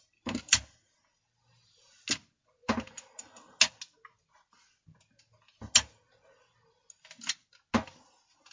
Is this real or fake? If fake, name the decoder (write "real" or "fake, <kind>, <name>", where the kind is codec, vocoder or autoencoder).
real